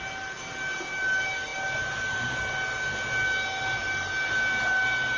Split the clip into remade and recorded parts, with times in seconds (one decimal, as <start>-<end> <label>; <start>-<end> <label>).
0.0-5.2 recorded